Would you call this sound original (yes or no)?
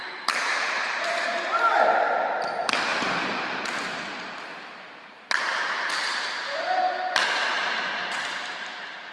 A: no